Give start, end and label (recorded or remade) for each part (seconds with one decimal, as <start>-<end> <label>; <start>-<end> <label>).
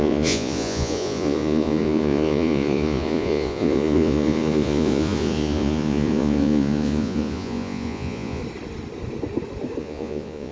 0.0-8.4 remade; 8.4-9.8 recorded; 9.8-10.5 remade